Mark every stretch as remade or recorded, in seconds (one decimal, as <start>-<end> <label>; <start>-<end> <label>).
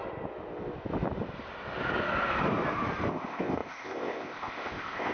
0.0-3.1 recorded; 3.1-5.1 remade